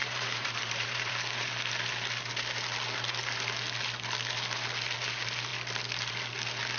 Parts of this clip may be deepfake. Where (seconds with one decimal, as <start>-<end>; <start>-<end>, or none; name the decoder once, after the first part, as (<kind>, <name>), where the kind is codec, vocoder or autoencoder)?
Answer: 0.0-1.1 (vocoder, BigVGAN v2)